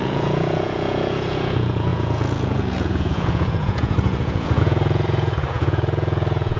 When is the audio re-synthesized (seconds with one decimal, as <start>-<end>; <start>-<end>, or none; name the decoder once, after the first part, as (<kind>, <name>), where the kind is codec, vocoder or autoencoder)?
0.0-6.6 (vocoder, Vocos)